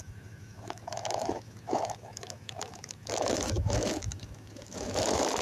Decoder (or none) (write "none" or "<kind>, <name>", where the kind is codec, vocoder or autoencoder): autoencoder, DAC-VAE